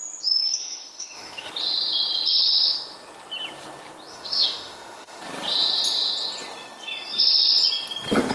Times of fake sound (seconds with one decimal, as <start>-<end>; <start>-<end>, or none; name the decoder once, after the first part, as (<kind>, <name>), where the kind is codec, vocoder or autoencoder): 0.6-1.5 (autoencoder, DAC-VAE); 4.1-5.2